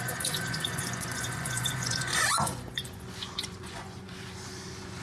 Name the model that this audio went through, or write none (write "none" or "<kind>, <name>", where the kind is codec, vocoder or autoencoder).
vocoder, Vocos